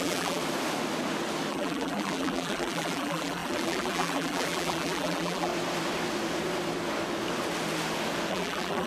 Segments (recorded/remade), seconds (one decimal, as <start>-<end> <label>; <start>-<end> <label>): 0.0-0.4 remade; 0.4-1.5 recorded; 1.5-5.5 remade; 5.5-8.3 recorded; 8.3-8.9 remade